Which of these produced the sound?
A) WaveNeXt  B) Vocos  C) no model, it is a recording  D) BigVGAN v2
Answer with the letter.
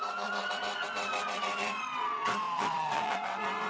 A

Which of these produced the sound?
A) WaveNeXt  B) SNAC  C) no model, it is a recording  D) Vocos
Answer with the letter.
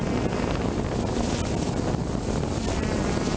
C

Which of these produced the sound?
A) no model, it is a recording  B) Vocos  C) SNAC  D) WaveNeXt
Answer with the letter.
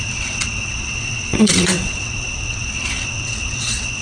D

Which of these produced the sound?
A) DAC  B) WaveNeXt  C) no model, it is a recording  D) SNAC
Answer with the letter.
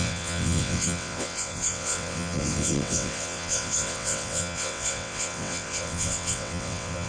B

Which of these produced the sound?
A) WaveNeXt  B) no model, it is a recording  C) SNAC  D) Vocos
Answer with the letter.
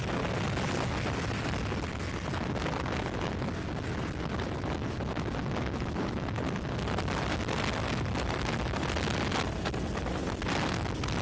B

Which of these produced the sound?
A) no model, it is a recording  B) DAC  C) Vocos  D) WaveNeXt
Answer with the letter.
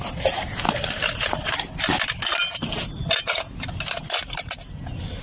A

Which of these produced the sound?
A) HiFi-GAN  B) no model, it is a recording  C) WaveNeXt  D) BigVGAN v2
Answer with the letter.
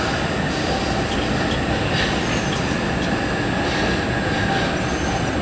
B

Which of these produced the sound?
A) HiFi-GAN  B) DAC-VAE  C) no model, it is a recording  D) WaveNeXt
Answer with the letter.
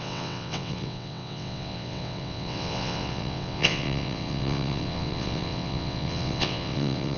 D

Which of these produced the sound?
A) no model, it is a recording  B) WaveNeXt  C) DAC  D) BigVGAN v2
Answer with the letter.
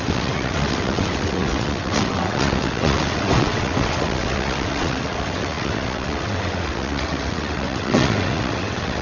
B